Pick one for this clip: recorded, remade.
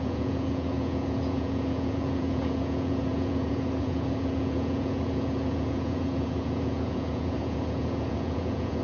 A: remade